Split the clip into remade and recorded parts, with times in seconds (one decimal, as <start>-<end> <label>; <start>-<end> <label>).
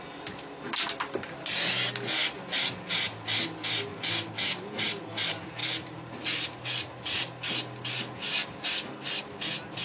0.0-9.8 recorded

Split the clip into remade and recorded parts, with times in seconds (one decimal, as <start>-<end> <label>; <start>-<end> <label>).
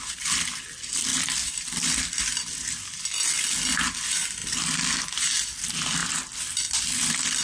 0.0-1.1 recorded; 1.1-2.2 remade; 2.2-4.4 recorded; 4.4-5.0 remade; 5.0-7.4 recorded